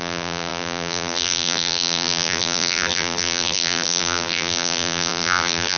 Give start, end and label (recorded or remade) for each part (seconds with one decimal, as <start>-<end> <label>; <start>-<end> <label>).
0.0-5.8 remade